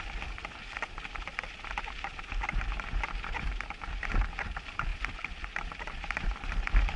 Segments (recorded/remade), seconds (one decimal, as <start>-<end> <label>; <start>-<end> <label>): 0.0-7.0 remade